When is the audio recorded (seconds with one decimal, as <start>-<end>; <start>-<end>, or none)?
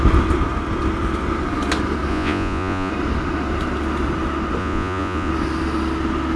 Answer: 0.0-2.1; 2.9-4.6; 5.3-6.4